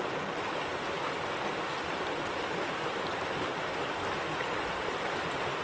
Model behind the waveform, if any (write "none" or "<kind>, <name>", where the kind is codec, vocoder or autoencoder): none